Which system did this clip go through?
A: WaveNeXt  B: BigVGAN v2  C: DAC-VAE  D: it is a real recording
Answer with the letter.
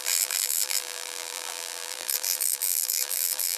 B